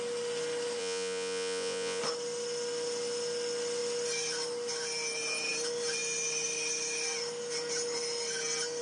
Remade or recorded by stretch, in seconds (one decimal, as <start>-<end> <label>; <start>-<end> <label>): 0.0-0.8 recorded; 0.8-2.0 remade; 2.0-8.8 recorded